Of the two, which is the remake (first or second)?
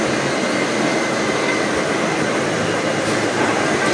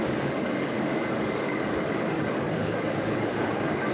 second